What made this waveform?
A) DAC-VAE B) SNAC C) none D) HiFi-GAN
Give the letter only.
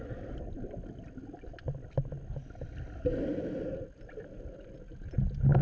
C